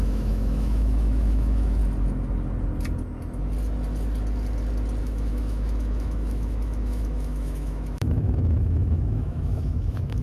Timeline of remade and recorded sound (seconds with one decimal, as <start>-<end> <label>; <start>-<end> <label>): 0.0-1.8 remade; 1.8-5.0 recorded; 5.0-10.2 remade